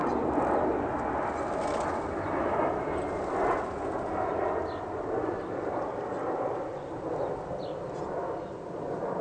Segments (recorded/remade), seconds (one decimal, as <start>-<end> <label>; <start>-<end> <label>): 0.0-9.2 recorded